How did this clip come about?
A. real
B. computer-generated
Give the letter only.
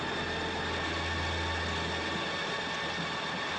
A